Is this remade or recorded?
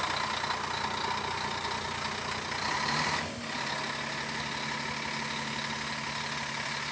recorded